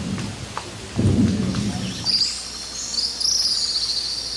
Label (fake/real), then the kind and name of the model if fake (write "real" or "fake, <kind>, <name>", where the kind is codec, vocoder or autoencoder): real